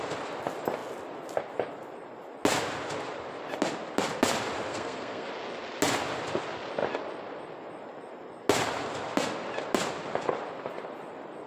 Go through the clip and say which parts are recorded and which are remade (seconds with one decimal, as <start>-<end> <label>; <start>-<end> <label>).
0.0-4.7 recorded; 4.7-5.3 remade; 5.3-11.5 recorded